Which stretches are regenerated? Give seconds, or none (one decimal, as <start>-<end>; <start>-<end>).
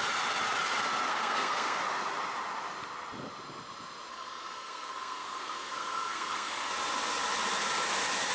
1.1-1.8; 4.1-6.7